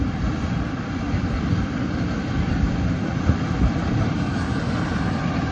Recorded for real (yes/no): no